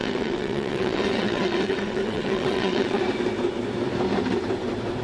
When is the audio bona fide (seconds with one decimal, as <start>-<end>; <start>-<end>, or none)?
3.0-5.0